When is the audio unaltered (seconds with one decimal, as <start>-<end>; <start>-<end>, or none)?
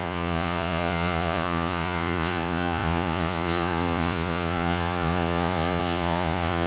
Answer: none